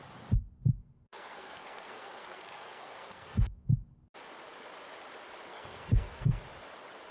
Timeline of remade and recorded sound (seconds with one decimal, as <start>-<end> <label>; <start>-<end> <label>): 0.0-0.8 recorded; 0.8-3.7 remade; 3.7-5.5 recorded; 5.5-6.4 remade; 6.4-7.1 recorded